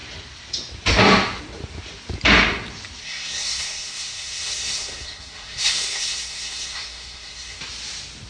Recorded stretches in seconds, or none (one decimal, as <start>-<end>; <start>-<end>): 0.0-3.0; 7.6-8.3